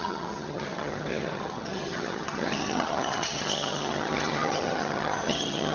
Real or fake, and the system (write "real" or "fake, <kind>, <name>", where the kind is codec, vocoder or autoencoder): fake, vocoder, HiFi-GAN